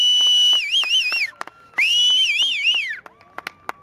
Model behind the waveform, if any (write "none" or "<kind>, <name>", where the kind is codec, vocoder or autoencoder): none